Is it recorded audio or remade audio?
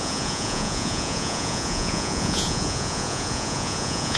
remade